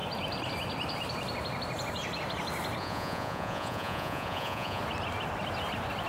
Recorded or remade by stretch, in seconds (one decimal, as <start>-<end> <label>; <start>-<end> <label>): 0.0-2.8 recorded; 2.8-4.8 remade; 4.8-6.1 recorded